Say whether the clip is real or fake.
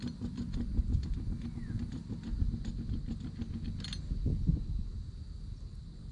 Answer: real